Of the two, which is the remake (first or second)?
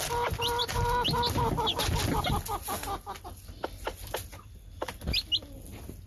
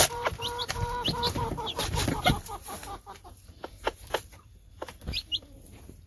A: second